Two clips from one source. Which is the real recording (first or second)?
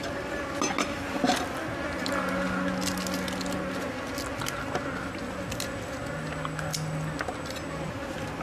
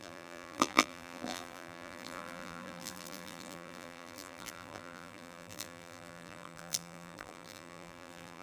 first